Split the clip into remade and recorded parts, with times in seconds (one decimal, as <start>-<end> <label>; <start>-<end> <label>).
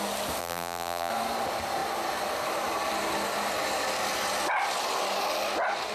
0.0-0.4 recorded; 0.4-1.1 remade; 1.1-5.9 recorded